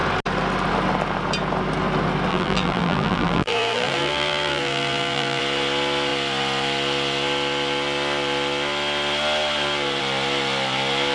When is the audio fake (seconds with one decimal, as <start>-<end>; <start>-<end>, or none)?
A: 2.3-5.4